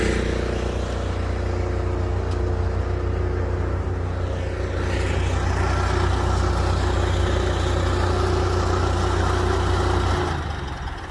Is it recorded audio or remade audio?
recorded